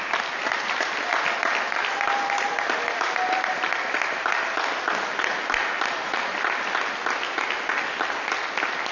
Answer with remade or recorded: recorded